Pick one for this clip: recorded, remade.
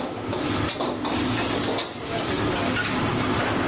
recorded